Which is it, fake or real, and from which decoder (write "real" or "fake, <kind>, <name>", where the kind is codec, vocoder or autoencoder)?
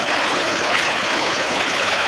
fake, codec, HILCodec